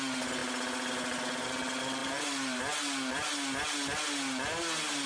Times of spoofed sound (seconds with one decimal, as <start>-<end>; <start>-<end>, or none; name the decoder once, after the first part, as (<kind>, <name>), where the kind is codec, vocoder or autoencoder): 2.0-2.6 (vocoder, BigVGAN v2)